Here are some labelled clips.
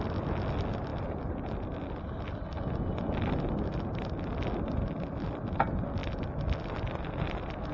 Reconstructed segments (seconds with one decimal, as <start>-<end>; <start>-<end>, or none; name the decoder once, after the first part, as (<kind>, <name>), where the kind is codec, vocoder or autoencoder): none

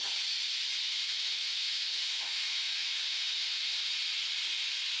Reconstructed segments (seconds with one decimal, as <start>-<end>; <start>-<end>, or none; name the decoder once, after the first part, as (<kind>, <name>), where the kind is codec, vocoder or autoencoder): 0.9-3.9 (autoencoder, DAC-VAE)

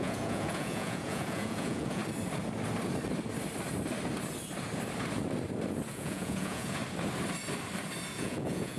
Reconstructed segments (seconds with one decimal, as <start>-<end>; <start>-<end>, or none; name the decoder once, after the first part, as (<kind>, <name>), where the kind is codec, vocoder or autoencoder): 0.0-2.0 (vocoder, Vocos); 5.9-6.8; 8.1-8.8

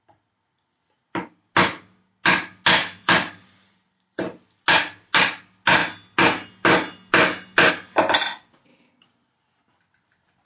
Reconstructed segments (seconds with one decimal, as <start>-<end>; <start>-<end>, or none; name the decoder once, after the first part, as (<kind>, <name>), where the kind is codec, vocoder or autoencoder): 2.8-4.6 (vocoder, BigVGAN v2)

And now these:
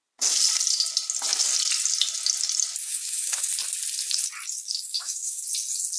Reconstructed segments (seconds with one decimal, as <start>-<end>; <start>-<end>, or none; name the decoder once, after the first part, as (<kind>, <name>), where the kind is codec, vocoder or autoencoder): 2.8-3.5 (autoencoder, DAC-VAE); 4.9-5.4

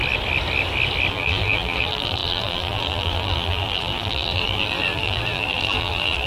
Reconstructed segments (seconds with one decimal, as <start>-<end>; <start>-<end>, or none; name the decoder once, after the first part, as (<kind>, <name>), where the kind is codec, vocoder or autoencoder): 1.1-6.3 (vocoder, BigVGAN v2)